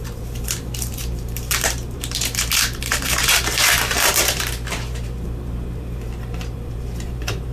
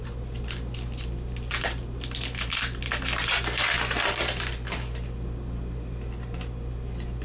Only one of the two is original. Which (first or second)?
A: second